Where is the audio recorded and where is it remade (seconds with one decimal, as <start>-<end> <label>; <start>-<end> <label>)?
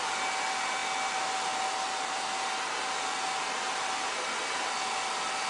0.0-5.5 recorded